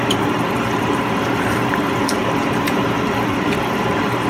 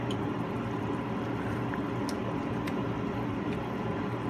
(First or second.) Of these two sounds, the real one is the second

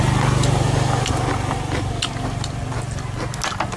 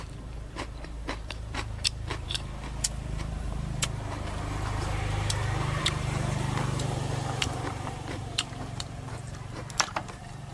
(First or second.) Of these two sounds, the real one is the first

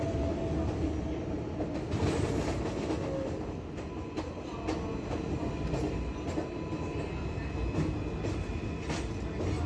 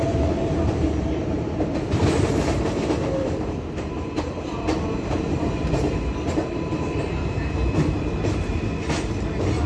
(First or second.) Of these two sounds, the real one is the first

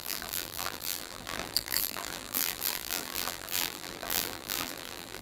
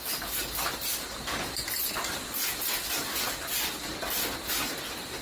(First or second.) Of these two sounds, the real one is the second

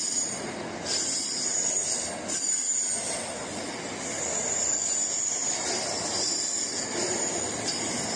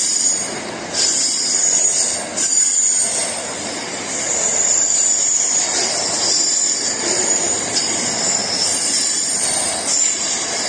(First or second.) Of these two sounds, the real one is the first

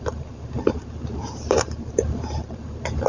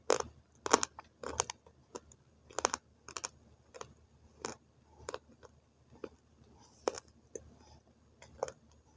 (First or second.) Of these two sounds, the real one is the second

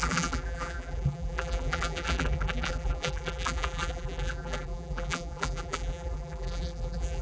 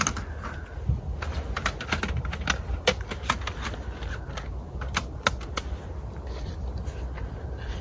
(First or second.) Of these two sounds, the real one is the second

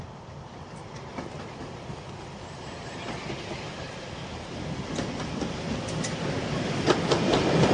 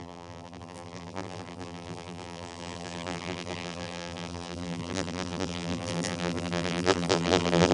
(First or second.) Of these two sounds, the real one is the first